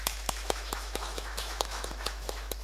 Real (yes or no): no